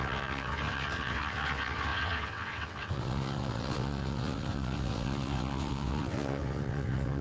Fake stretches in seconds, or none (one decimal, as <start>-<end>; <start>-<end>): 0.0-7.2